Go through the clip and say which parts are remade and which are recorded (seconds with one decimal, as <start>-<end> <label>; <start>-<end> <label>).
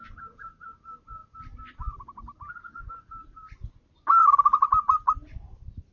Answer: 0.0-5.9 recorded